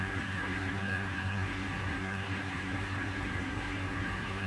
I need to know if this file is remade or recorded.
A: remade